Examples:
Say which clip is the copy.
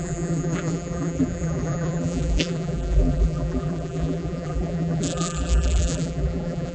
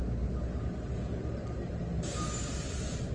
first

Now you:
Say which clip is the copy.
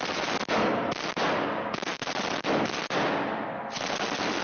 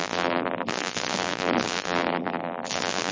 second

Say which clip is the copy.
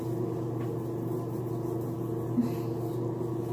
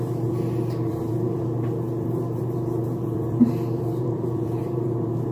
second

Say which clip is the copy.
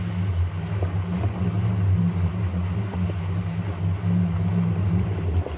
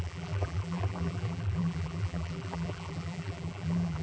second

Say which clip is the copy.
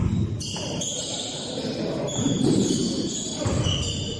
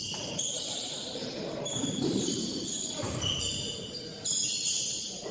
second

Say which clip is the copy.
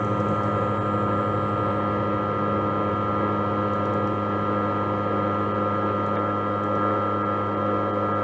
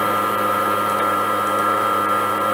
second